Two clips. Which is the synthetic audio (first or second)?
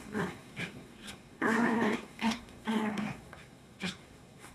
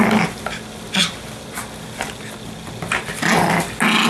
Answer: first